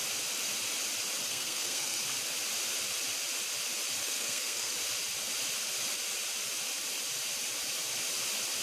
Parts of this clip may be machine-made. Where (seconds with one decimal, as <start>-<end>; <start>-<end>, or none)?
1.3-2.0; 4.0-4.7